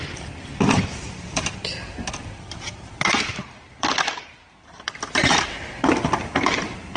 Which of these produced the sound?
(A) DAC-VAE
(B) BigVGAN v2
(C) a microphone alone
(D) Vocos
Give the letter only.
B